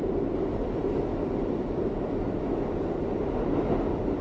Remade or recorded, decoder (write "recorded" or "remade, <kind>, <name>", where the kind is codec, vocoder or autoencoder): recorded